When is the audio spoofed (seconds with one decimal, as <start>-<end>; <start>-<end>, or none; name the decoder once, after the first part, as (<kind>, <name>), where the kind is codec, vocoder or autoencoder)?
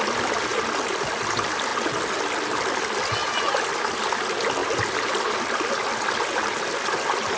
3.2-3.7 (vocoder, BigVGAN v2)